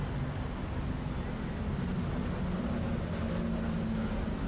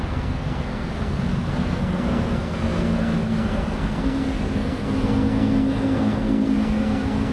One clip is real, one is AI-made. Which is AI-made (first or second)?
second